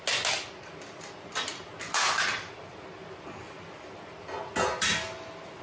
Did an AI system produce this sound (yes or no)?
no